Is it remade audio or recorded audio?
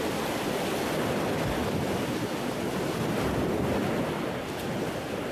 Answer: recorded